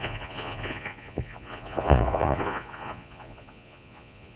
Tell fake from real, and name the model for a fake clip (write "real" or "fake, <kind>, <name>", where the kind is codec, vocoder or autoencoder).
fake, vocoder, Vocos